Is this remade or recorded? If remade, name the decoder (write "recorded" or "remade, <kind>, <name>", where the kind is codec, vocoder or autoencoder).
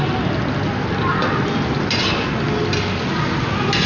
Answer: recorded